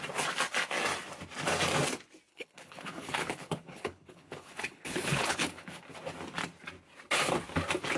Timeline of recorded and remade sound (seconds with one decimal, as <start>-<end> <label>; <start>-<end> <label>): 0.0-2.3 recorded; 2.3-5.8 remade; 5.8-8.0 recorded